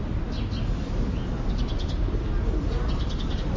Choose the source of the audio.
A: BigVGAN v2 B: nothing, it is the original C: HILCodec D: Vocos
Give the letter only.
B